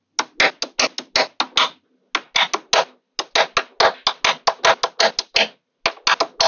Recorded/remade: recorded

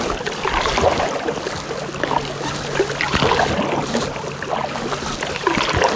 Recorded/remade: recorded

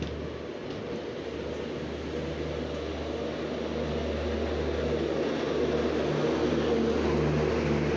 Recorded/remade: recorded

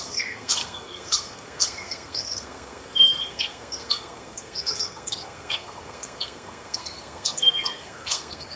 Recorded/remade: remade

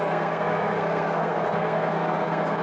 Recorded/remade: remade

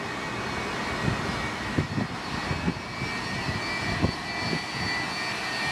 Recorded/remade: recorded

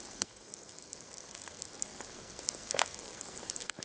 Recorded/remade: remade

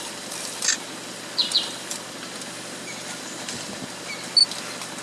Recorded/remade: recorded